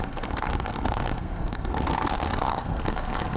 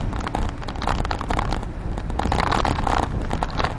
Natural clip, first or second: second